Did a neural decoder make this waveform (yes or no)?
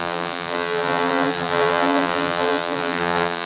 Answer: yes